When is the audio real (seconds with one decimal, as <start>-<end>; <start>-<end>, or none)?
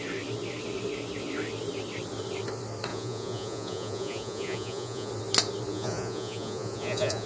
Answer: 0.0-2.9; 5.1-5.7